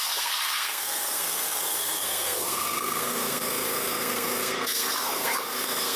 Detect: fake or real fake